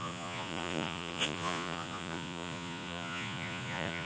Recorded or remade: remade